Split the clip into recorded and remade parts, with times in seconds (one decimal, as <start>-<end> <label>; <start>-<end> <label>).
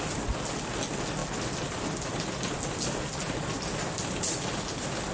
0.0-5.1 recorded